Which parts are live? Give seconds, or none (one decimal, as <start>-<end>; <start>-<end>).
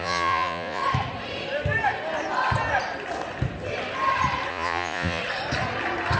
0.8-4.5; 5.2-6.2